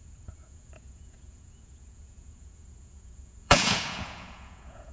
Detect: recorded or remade remade